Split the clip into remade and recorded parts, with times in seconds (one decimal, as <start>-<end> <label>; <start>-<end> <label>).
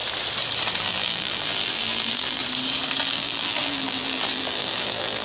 0.0-0.8 recorded; 0.8-2.4 remade; 2.4-3.0 recorded; 3.0-5.2 remade